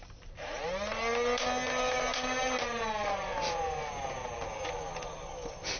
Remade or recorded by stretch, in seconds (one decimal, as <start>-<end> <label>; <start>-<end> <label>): 0.0-5.8 recorded